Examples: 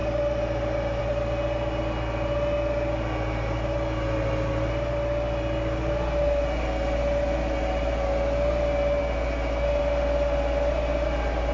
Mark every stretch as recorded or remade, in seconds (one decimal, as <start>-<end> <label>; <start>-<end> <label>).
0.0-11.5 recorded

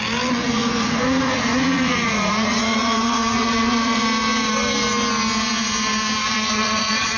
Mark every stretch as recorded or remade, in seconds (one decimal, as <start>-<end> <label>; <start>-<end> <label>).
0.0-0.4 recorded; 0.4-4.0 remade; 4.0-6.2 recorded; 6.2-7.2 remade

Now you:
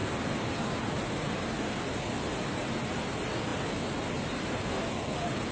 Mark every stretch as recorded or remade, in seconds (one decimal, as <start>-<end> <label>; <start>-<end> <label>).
0.0-5.5 recorded

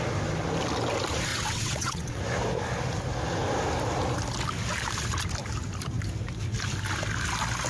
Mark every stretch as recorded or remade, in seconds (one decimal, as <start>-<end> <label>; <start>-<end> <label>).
0.0-1.3 recorded; 1.3-2.2 remade; 2.2-7.7 recorded

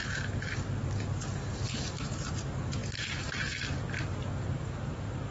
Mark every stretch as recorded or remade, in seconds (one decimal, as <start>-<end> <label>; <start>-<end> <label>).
0.0-5.3 recorded

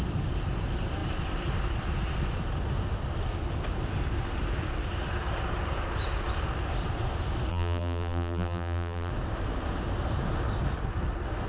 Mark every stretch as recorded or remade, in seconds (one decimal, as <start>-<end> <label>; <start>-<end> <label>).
0.0-7.5 recorded; 7.5-9.1 remade; 9.1-11.5 recorded

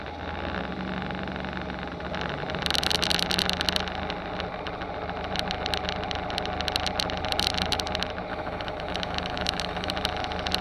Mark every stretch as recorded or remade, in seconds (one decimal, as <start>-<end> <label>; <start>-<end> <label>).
0.0-8.3 recorded; 8.3-9.9 remade; 9.9-10.6 recorded

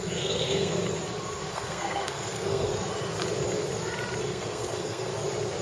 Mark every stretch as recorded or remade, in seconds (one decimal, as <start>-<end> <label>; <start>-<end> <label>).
0.0-0.8 remade; 0.8-1.5 recorded; 1.5-2.7 remade; 2.7-4.2 recorded; 4.2-5.1 remade; 5.1-5.6 recorded